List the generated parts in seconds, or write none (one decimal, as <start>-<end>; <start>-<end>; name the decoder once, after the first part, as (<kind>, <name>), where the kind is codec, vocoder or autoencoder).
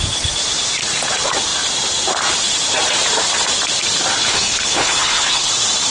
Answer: 4.2-5.5 (codec, HILCodec)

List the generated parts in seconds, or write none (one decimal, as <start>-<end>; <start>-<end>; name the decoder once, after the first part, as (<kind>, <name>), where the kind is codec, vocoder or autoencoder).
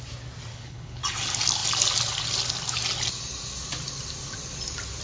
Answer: 0.5-1.0 (codec, HILCodec)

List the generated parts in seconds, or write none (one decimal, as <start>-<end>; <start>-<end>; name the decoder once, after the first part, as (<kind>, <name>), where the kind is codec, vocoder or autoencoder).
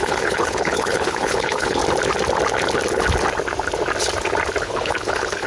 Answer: 0.0-1.8 (codec, HILCodec); 4.6-5.5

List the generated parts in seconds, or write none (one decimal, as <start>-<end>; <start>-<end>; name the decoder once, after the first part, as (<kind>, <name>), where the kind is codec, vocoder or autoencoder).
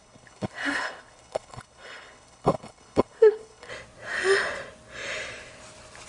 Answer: 0.0-3.7 (codec, HILCodec)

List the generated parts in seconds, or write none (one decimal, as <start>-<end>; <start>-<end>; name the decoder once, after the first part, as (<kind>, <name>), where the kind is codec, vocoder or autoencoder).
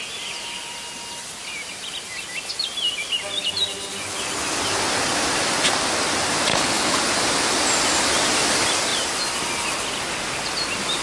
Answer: 6.5-7.0 (codec, HILCodec)